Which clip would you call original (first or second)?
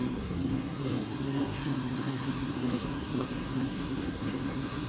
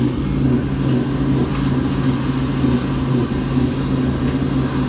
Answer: second